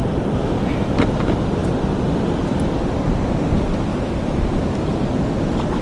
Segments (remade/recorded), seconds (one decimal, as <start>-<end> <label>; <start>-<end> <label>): 0.0-5.8 recorded